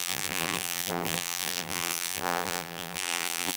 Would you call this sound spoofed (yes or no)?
yes